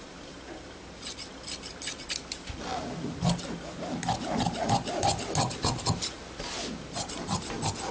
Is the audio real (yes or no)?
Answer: yes